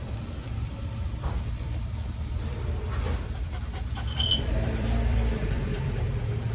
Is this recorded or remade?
remade